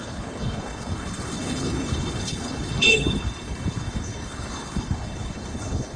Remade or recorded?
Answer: remade